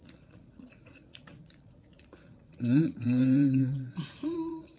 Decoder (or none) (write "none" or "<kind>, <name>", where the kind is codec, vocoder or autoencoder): vocoder, Vocos